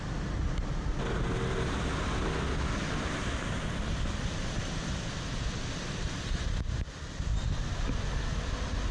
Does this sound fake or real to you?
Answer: real